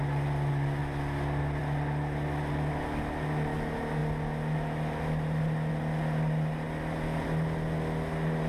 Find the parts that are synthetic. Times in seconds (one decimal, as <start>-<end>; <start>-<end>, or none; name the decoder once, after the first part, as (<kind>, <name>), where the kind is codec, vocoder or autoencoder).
none